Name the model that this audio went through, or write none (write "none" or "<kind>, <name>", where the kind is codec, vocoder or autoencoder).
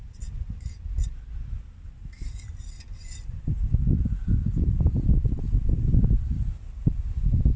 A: none